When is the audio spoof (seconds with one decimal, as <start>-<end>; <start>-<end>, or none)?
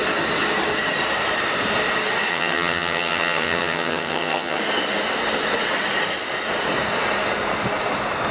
2.3-4.6